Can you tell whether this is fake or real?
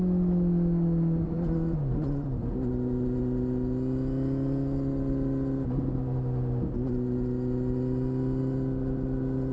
real